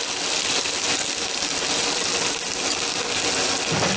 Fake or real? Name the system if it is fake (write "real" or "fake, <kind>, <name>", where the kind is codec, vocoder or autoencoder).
real